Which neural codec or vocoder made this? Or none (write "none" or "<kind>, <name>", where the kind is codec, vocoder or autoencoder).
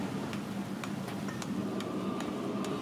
none